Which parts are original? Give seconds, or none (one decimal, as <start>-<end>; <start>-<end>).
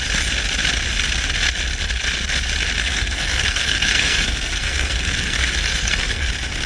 0.0-2.8; 6.3-6.7